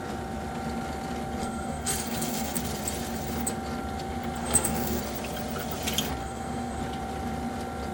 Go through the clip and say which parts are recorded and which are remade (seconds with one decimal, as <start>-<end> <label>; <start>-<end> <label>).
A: 0.0-1.4 recorded; 1.4-2.6 remade; 2.6-4.4 recorded; 4.4-5.0 remade; 5.0-6.2 recorded; 6.2-6.8 remade; 6.8-7.9 recorded